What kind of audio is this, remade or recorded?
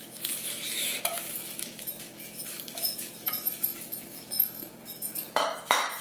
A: remade